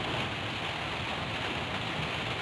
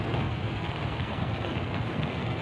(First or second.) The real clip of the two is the first